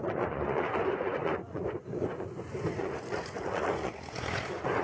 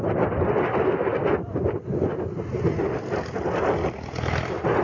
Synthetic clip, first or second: first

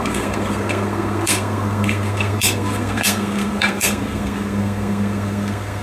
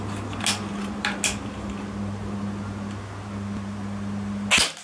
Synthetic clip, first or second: first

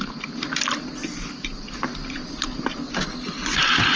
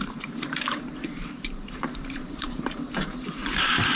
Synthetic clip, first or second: second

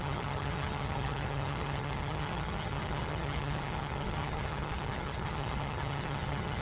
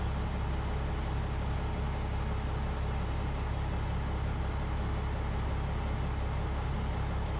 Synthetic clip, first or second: first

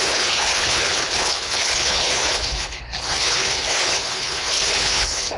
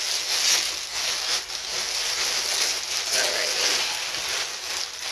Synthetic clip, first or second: first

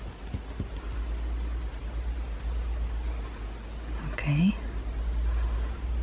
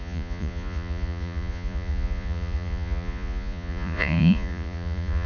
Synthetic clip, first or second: second